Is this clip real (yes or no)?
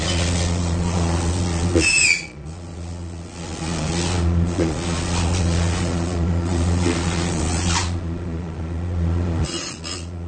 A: no